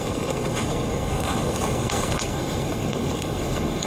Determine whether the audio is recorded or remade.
remade